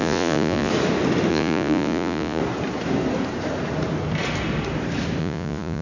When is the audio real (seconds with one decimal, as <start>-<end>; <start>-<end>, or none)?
0.7-1.3; 2.4-5.2